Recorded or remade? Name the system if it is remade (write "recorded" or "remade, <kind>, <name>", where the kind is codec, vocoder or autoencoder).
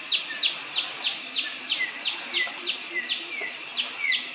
recorded